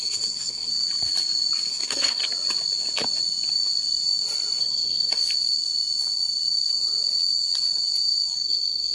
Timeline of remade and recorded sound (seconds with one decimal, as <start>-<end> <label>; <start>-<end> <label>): 0.0-0.7 remade; 0.7-1.7 recorded; 1.7-2.2 remade; 2.2-4.6 recorded; 4.6-5.2 remade; 5.2-8.3 recorded; 8.3-8.9 remade